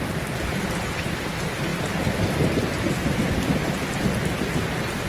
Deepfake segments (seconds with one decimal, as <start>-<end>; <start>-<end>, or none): none